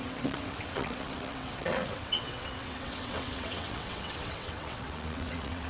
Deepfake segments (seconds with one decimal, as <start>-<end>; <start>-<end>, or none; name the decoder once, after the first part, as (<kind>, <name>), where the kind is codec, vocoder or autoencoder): 0.0-5.7 (vocoder, WaveNeXt)